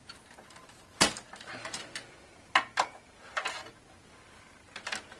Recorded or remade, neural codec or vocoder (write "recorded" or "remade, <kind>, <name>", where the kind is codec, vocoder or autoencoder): recorded